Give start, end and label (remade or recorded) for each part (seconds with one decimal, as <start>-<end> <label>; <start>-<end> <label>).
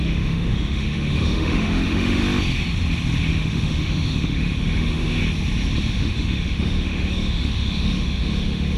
0.0-2.2 remade; 2.2-3.3 recorded; 3.3-5.2 remade; 5.2-5.9 recorded; 5.9-8.8 remade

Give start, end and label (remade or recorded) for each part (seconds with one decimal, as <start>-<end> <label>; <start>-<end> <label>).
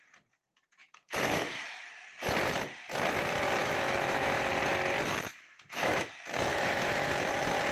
0.0-0.8 recorded; 0.8-1.8 remade; 1.8-3.6 recorded; 3.6-4.5 remade; 4.5-5.3 recorded; 5.3-6.1 remade; 6.1-6.5 recorded; 6.5-7.1 remade; 7.1-7.7 recorded